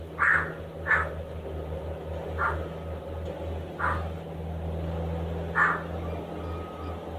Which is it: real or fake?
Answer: real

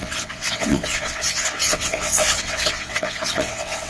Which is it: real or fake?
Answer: fake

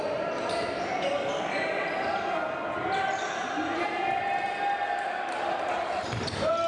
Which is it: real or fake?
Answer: real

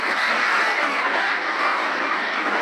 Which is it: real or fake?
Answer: fake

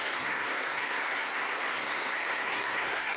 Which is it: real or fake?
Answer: fake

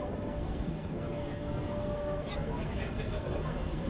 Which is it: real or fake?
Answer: fake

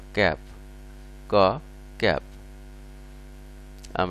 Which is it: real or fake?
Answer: real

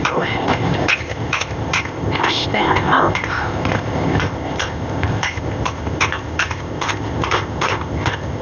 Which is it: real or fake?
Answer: fake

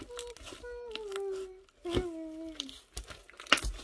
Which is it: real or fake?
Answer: real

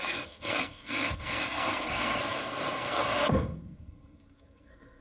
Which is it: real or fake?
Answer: fake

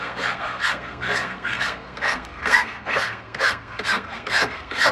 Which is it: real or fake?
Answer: fake